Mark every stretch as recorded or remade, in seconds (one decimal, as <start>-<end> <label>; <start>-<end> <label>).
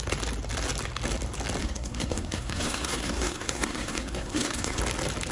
0.0-1.6 recorded; 1.6-4.8 remade; 4.8-5.3 recorded